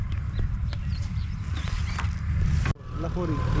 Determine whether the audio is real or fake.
real